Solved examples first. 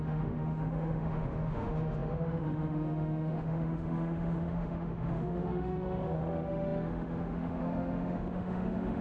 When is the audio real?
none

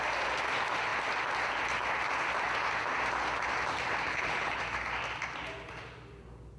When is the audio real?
0.0-4.1; 4.6-6.6

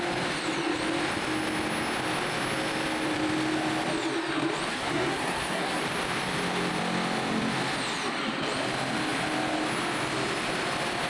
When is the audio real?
0.0-4.7; 5.8-11.1

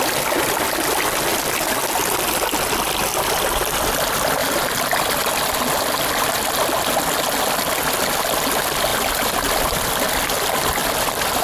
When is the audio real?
0.0-8.9; 9.9-10.8

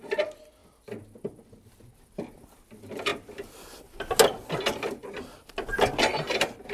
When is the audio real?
0.0-6.7

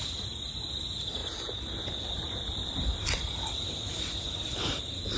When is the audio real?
0.0-5.2

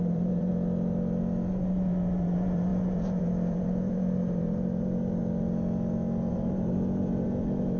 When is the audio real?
0.5-1.5; 5.2-6.3